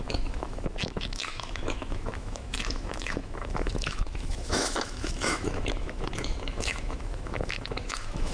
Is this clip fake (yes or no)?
yes